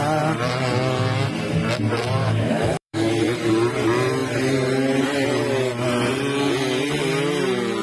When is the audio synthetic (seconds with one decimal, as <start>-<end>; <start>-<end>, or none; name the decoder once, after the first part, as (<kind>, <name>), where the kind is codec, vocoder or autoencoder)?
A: 2.2-3.1 (autoencoder, DAC-VAE)